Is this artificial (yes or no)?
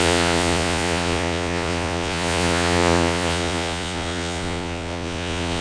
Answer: yes